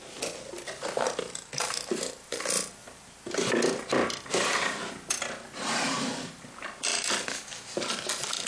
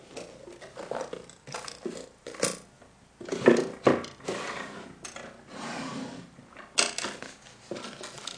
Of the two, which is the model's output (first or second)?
first